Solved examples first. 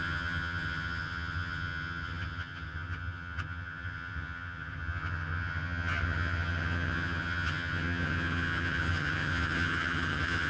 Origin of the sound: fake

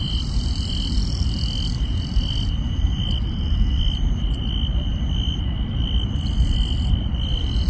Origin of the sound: real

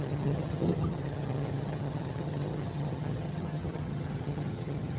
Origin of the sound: fake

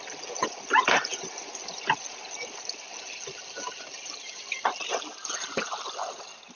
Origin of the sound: real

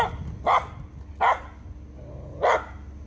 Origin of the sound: real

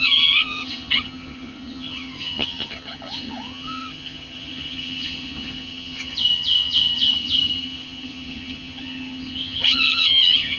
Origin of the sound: fake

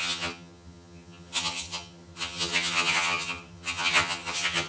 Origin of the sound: fake